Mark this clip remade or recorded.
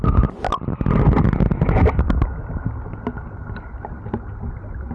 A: recorded